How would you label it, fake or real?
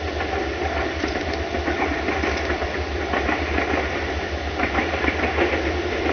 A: real